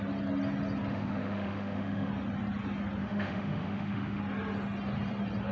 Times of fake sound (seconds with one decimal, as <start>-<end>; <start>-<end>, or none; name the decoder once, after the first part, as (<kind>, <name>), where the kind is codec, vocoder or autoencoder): 0.9-2.1 (autoencoder, DAC-VAE); 3.0-4.2